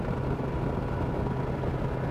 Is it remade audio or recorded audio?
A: recorded